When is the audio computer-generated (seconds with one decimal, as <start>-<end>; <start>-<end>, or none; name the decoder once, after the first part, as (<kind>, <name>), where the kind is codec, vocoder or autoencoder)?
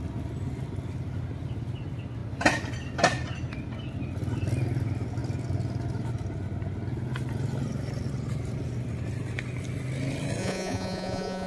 10.4-11.5 (vocoder, Vocos)